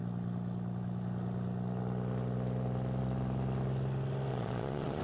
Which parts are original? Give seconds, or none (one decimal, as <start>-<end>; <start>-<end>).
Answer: 0.0-4.3